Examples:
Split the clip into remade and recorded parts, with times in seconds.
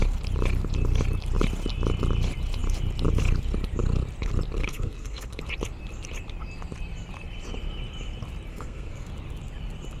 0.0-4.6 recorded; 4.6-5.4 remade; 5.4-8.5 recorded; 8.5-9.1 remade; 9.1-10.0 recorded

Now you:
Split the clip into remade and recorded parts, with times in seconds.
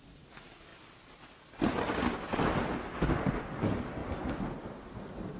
0.0-5.4 recorded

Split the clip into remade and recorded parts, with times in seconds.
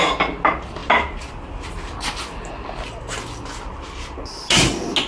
0.0-5.1 recorded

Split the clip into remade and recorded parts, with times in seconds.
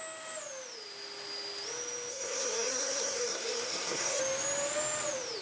0.0-2.1 recorded; 2.1-4.2 remade; 4.2-5.4 recorded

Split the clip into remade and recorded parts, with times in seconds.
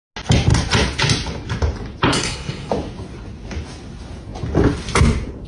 0.0-2.1 recorded; 2.1-2.7 remade; 2.7-5.5 recorded